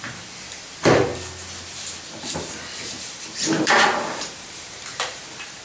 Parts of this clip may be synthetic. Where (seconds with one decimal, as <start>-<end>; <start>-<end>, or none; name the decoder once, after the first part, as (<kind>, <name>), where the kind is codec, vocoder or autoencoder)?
0.0-1.1 (vocoder, BigVGAN v2); 2.2-5.6